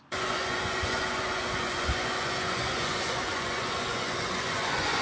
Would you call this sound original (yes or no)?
no